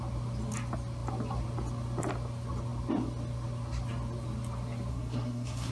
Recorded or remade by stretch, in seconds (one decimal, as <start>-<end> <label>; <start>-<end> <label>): 0.0-4.9 recorded; 4.9-5.7 remade